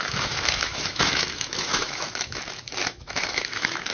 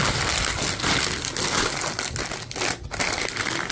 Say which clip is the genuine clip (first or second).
second